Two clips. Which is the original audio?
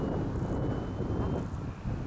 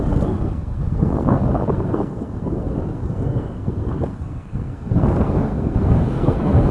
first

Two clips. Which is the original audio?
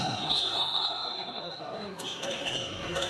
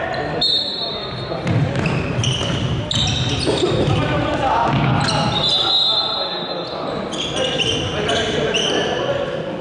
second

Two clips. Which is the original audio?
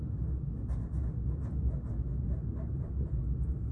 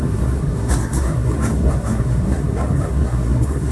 first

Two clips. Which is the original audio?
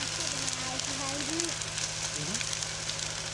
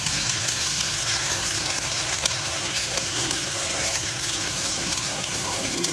first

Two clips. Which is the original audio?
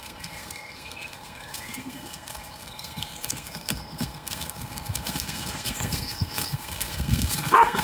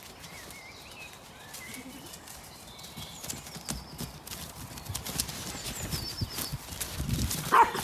second